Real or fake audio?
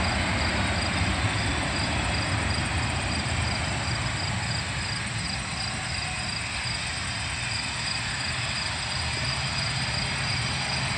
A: real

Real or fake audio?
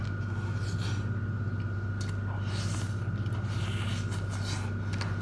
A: real